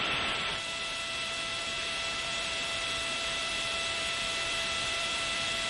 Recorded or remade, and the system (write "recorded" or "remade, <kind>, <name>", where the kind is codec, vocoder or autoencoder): remade, vocoder, BigVGAN v2